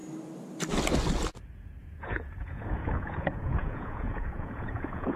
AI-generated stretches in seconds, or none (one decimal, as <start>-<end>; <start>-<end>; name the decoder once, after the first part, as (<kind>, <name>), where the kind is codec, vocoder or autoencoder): 1.8-5.2 (vocoder, Vocos)